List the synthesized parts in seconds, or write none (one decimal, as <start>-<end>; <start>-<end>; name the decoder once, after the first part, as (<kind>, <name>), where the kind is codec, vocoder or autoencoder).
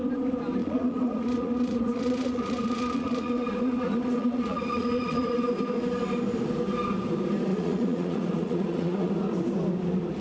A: 0.6-5.4 (vocoder, Vocos); 7.5-9.1